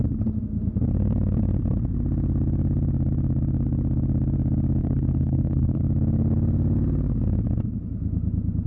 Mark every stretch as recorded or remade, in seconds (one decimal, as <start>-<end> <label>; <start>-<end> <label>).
0.0-4.8 recorded; 4.8-5.8 remade; 5.8-8.7 recorded